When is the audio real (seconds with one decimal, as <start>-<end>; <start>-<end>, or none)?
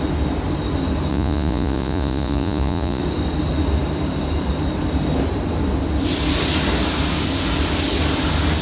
0.0-1.1; 3.0-8.6